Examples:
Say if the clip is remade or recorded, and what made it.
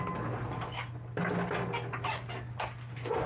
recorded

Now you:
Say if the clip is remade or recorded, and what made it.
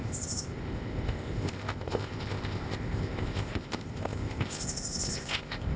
remade, codec, ZipCodec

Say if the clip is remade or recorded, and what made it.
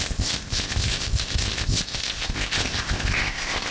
remade, codec, ZipCodec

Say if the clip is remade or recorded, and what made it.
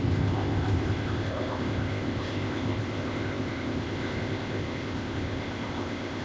remade, codec, ZipCodec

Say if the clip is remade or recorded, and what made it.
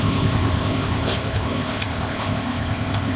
remade, codec, ZipCodec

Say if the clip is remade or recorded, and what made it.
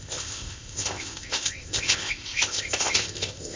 remade, codec, ZipCodec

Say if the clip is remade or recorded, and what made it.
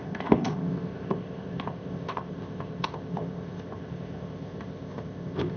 remade, codec, ZipCodec